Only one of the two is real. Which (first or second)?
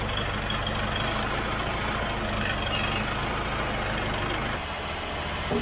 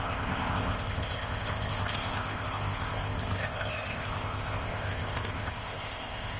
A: first